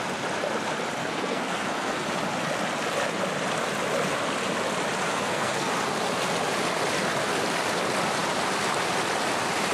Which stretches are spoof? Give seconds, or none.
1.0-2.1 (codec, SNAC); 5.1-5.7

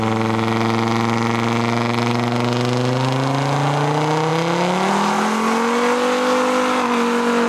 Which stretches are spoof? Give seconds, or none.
none

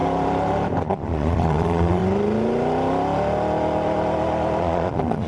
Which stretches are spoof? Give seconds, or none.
0.8-2.0 (vocoder, Vocos); 4.6-5.3